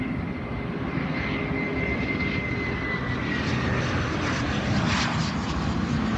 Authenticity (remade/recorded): recorded